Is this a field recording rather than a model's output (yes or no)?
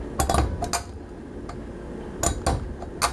yes